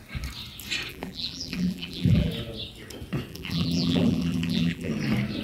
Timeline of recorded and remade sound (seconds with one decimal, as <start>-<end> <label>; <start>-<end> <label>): 0.0-0.9 recorded; 0.9-2.3 remade; 2.3-3.3 recorded; 3.3-4.9 remade; 4.9-5.4 recorded